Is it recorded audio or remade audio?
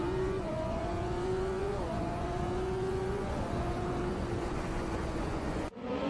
remade